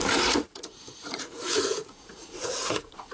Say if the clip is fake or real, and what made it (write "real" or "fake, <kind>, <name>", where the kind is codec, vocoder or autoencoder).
fake, vocoder, Vocos